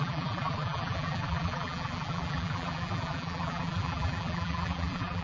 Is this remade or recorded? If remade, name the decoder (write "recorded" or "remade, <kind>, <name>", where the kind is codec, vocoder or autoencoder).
remade, vocoder, BigVGAN v2